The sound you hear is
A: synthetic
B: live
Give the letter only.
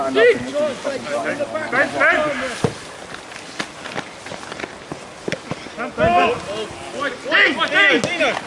B